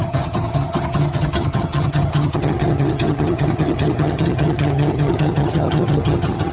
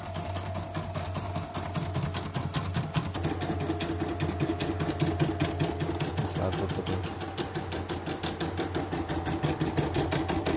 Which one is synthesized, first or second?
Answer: first